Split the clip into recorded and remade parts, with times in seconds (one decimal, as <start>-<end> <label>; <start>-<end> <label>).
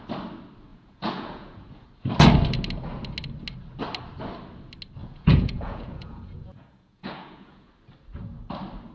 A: 0.0-0.7 recorded; 0.7-1.9 remade; 1.9-5.0 recorded; 5.0-7.7 remade; 7.7-8.9 recorded